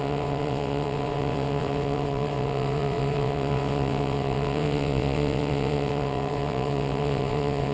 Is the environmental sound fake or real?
fake